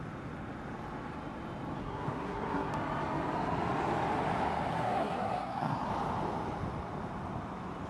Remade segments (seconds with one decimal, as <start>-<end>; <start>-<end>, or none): 1.8-2.7; 4.7-5.9